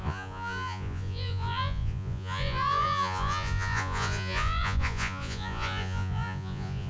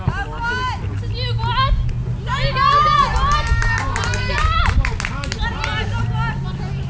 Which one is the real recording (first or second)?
second